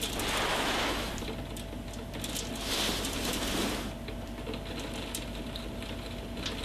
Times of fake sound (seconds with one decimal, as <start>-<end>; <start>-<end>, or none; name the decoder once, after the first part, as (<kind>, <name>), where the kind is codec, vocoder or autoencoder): 0.5-1.1 (autoencoder, DAC-VAE)